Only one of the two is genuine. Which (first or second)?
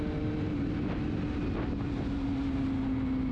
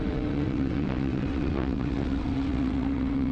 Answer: first